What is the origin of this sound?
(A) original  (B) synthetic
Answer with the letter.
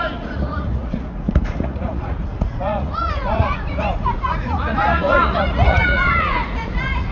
B